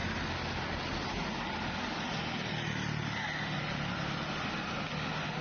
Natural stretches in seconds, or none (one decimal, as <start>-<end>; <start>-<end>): 0.0-5.4